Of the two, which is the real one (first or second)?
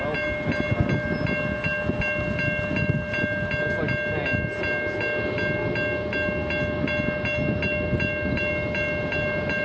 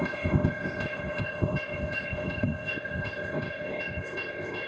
first